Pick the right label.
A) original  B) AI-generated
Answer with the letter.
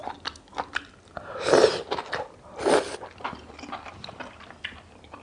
A